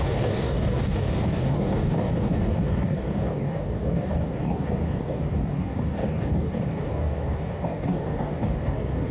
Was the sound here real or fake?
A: fake